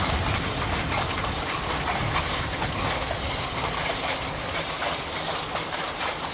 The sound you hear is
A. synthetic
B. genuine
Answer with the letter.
B